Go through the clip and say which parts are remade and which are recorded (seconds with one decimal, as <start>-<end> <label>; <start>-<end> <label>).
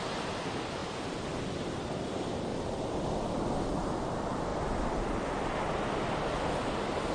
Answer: 0.0-2.5 recorded; 2.5-3.5 remade; 3.5-4.5 recorded; 4.5-5.0 remade; 5.0-7.1 recorded